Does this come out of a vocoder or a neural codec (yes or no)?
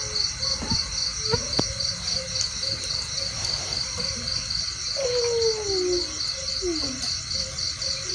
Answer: no